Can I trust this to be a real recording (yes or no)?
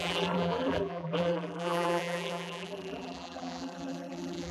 no